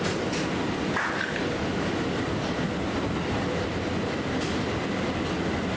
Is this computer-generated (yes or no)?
no